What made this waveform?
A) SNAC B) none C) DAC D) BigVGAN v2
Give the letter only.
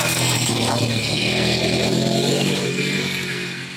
A